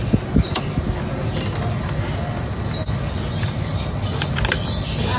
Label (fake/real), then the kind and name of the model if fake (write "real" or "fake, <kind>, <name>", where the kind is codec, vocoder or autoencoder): real